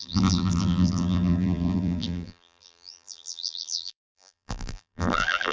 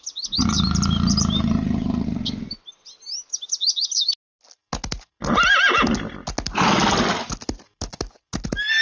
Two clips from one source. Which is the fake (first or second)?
first